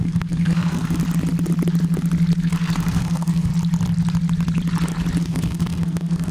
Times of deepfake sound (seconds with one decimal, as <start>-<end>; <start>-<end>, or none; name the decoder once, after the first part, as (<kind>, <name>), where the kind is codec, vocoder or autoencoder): 0.0-1.0 (codec, SNAC); 2.4-3.5; 5.2-6.3